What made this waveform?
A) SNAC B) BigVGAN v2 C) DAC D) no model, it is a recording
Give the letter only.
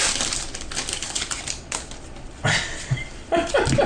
D